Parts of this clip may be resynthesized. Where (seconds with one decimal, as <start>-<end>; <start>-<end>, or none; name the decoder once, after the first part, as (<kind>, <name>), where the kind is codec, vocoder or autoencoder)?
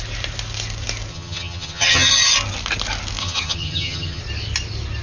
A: 1.1-2.1 (vocoder, HiFi-GAN); 3.2-4.2